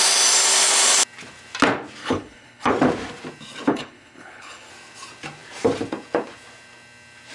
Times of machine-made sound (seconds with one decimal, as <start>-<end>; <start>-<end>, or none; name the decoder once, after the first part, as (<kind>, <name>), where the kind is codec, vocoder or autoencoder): 2.0-2.7 (codec, HILCodec); 3.7-4.7